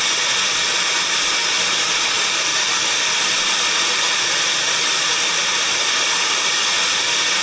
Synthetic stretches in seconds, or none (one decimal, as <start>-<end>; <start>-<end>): 0.0-0.6; 1.5-2.5; 4.6-7.4